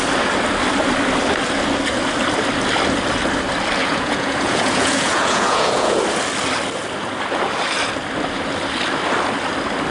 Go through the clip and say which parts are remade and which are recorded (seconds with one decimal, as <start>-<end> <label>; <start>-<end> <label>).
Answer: 0.0-3.8 recorded; 3.8-6.0 remade; 6.0-9.9 recorded